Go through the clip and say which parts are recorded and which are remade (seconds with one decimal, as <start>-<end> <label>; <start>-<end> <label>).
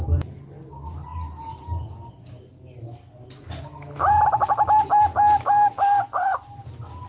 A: 0.0-7.1 recorded